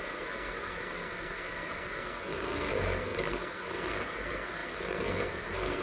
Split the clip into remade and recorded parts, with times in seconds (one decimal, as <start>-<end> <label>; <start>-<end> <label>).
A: 0.0-5.8 remade